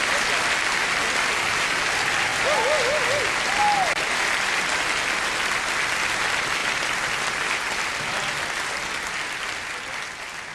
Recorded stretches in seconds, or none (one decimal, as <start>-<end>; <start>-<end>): 0.0-10.5